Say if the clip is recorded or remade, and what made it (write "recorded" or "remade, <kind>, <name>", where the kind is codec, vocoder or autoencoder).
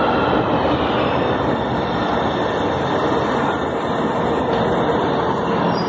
recorded